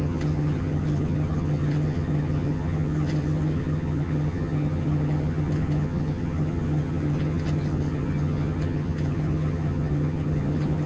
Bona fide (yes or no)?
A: no